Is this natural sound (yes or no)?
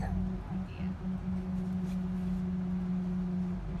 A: yes